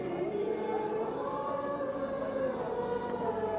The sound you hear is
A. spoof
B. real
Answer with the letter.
B